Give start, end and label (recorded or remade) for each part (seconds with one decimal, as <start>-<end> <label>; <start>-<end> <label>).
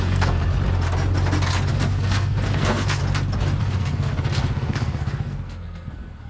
0.0-0.4 remade; 0.4-1.7 recorded; 1.7-3.0 remade; 3.0-3.6 recorded; 3.6-6.3 remade